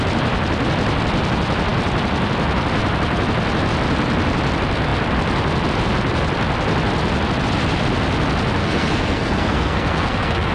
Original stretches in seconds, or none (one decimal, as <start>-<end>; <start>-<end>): 0.0-8.6